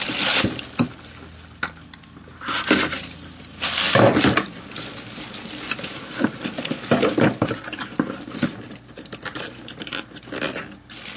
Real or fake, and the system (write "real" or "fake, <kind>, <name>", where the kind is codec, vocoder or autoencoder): real